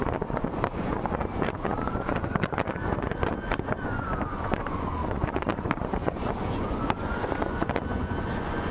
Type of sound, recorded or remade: remade